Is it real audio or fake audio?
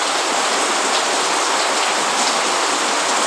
real